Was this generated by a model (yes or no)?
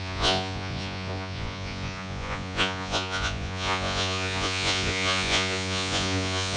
yes